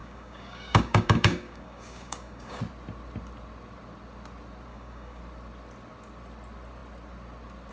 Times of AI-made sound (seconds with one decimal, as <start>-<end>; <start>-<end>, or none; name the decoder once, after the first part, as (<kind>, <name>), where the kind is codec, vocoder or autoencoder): 0.0-2.6 (codec, DAC); 4.7-5.2